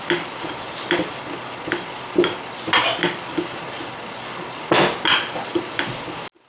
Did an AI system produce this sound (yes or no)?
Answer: no